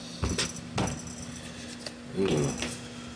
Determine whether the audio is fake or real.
real